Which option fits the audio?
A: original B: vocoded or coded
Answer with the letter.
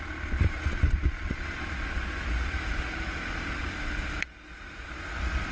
A